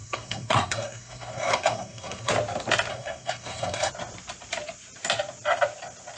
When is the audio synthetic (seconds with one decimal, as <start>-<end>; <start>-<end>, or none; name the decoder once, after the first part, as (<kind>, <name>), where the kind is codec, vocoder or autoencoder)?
0.0-2.3 (codec, SNAC); 2.9-3.9